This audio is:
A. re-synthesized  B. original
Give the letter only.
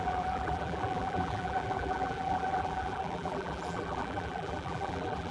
A